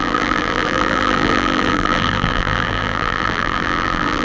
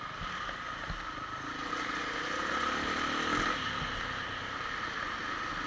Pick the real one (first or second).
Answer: second